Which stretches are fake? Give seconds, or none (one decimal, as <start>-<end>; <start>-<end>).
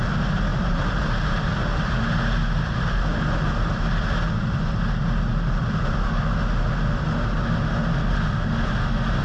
0.5-2.0